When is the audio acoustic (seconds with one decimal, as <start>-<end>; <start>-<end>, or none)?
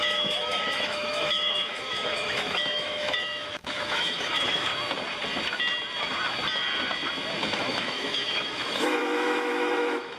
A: 4.7-7.4